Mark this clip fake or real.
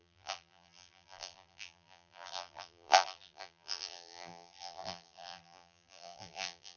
fake